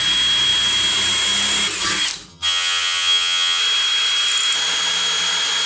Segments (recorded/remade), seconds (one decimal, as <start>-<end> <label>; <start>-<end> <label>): 0.0-2.3 recorded; 2.3-3.6 remade; 3.6-5.7 recorded